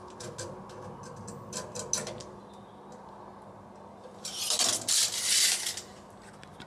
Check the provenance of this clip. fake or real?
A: real